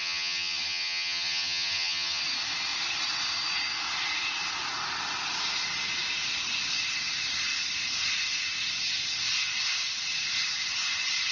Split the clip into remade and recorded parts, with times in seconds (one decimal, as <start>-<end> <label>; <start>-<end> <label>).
0.0-2.2 remade; 2.2-11.3 recorded

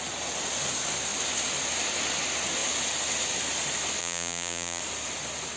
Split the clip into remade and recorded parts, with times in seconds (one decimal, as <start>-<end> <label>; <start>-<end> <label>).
0.0-4.0 recorded; 4.0-4.8 remade; 4.8-5.6 recorded

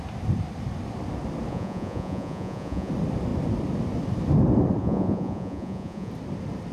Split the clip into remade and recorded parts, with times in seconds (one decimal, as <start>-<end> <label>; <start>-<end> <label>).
0.0-1.5 recorded; 1.5-2.9 remade; 2.9-4.8 recorded; 4.8-6.1 remade; 6.1-6.7 recorded

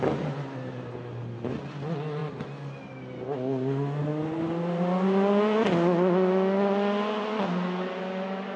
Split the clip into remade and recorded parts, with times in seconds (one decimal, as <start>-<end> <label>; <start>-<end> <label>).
0.0-8.6 recorded

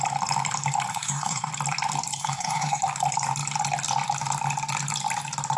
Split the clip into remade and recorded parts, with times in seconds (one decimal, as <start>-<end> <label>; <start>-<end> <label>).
0.0-0.9 recorded; 0.9-1.5 remade; 1.5-2.2 recorded; 2.2-2.8 remade; 2.8-5.6 recorded

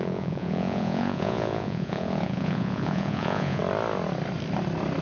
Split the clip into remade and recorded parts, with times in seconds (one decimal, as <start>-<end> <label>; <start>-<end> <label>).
0.0-3.6 remade; 3.6-5.0 recorded

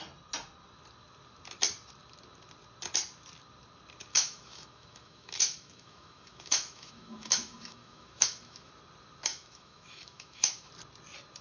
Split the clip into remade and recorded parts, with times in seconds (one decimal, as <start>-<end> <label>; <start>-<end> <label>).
0.0-4.1 recorded; 4.1-8.7 remade; 8.7-9.3 recorded; 9.3-10.7 remade; 10.7-11.4 recorded

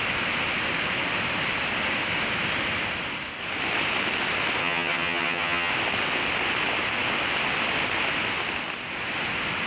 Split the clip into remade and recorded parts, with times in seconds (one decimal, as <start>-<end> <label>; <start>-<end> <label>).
0.0-4.6 recorded; 4.6-5.7 remade; 5.7-9.7 recorded